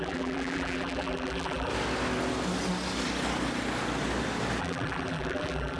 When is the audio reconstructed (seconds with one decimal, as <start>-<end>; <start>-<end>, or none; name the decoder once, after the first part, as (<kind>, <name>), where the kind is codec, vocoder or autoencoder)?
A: 0.0-1.7 (vocoder, BigVGAN v2); 4.6-5.8